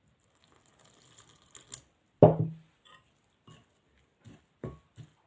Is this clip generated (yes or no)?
no